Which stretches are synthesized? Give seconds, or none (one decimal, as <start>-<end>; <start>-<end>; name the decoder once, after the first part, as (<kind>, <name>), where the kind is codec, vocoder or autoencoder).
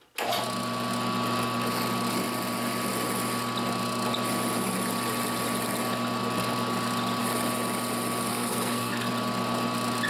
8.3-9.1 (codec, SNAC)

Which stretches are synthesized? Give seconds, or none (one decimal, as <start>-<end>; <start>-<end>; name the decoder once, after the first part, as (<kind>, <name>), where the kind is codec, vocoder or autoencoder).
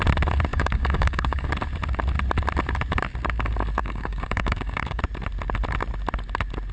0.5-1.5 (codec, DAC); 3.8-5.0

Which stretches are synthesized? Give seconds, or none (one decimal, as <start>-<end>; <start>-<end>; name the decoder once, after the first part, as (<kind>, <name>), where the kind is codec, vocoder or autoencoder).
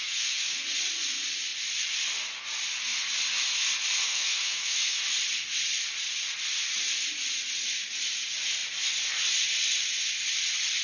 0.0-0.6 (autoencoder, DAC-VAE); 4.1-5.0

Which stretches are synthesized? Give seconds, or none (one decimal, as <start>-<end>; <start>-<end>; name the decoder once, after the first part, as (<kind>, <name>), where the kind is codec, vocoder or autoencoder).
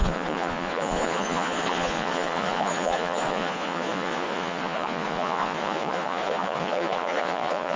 0.0-7.8 (vocoder, Vocos)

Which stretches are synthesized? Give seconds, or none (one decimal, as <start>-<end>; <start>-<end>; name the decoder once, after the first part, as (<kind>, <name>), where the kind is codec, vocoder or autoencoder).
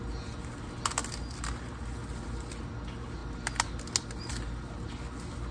none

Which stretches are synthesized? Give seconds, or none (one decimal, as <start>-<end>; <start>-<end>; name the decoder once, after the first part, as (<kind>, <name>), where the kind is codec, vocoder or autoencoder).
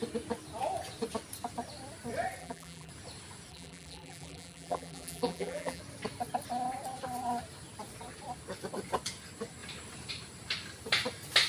2.4-2.9 (vocoder, BigVGAN v2); 3.5-5.8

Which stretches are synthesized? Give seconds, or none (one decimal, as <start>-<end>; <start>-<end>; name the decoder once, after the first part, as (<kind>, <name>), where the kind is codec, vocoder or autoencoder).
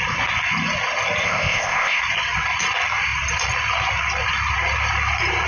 1.2-2.0 (codec, ZipCodec)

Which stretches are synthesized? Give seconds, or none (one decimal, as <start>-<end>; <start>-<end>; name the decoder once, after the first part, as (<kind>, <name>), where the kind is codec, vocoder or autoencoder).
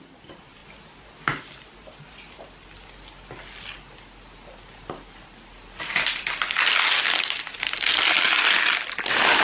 none